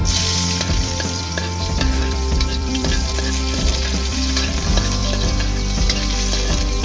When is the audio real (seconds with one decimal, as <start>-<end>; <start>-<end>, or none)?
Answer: 0.0-0.6; 1.4-2.0; 5.0-6.8